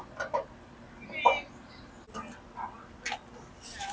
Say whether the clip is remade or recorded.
recorded